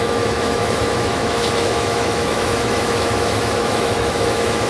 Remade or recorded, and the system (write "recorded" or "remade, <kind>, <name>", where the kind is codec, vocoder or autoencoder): remade, autoencoder, DAC-VAE